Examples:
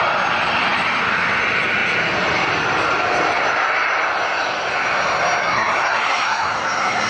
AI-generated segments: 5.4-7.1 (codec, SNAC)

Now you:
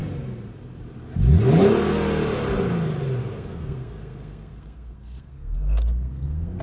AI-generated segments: 3.2-6.6 (codec, SNAC)

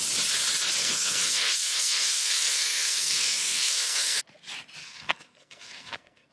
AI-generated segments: 0.8-4.2 (codec, SNAC); 4.8-6.3

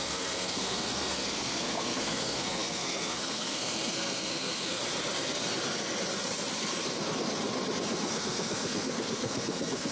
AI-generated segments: 0.0-4.8 (codec, SNAC); 8.1-9.9

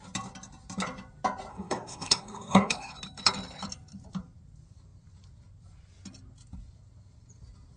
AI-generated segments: 1.5-2.9 (codec, SNAC)

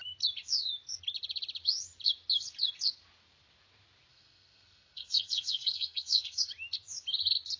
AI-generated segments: 4.1-6.5 (codec, SNAC)

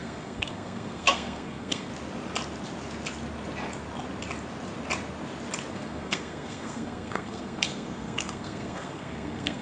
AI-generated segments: 0.0-1.9 (codec, SNAC); 5.7-9.6

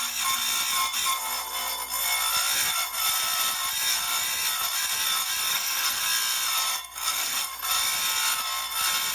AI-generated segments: 5.5-6.0 (codec, SNAC); 6.7-7.5